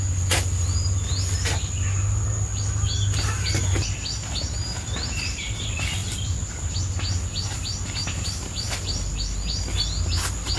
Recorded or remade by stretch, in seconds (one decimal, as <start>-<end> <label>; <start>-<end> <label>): 0.0-10.6 recorded